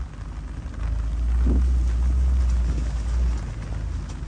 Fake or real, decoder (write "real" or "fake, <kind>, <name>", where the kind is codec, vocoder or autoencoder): real